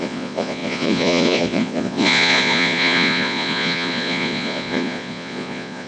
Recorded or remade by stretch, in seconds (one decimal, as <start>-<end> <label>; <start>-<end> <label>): 0.0-5.9 remade